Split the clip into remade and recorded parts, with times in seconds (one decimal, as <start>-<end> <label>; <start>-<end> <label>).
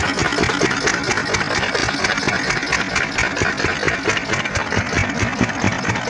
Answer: 0.0-6.1 recorded